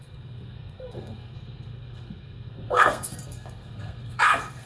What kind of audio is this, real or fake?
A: fake